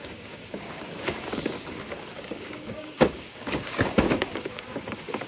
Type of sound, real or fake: fake